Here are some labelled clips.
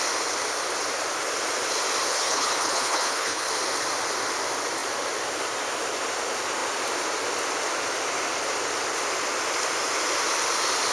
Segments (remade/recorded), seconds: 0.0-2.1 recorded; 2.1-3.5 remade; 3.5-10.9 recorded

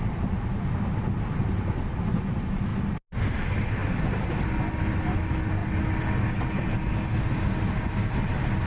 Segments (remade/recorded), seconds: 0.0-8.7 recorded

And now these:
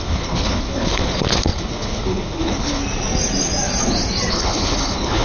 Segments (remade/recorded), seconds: 0.0-2.8 remade; 2.8-4.3 recorded; 4.3-5.2 remade